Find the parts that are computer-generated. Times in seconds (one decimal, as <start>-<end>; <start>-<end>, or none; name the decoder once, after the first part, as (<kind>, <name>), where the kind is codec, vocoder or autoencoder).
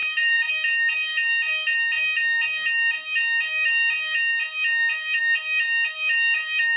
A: 0.0-0.5 (vocoder, BigVGAN v2)